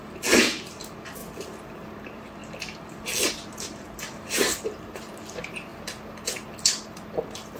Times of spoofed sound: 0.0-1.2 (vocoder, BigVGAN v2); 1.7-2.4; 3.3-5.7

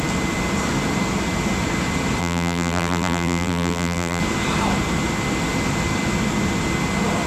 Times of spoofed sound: 2.2-4.2 (vocoder, BigVGAN v2)

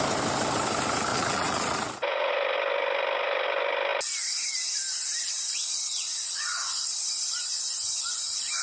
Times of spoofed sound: 1.1-2.3 (vocoder, Vocos); 5.9-6.8

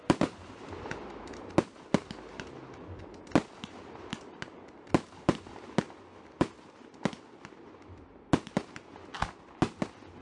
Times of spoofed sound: none

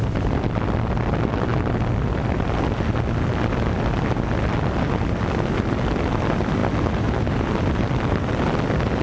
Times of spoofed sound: none

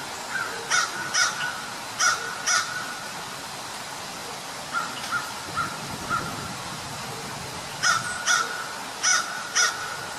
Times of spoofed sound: 4.2-5.2 (vocoder, BigVGAN v2); 9.1-9.7